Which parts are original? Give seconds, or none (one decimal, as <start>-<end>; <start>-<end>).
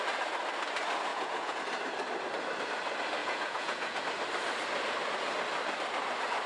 0.0-1.1; 1.6-3.2; 4.0-6.5